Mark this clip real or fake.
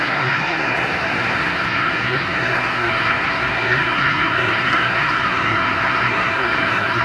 fake